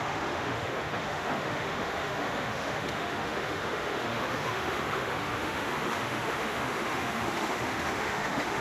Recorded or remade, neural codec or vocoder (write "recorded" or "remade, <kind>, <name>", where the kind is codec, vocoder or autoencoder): remade, autoencoder, DAC-VAE